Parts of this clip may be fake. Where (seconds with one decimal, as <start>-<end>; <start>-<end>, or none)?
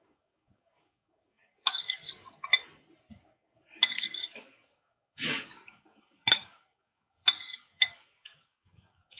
0.0-2.5; 3.1-9.2